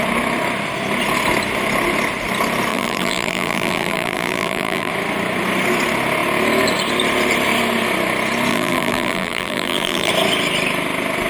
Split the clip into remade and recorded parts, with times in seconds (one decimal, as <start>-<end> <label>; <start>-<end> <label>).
0.0-2.7 recorded; 2.7-4.9 remade; 4.9-8.5 recorded; 8.5-10.1 remade; 10.1-11.3 recorded